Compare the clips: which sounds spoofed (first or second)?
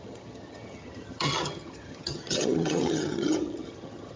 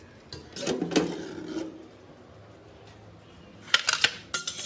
first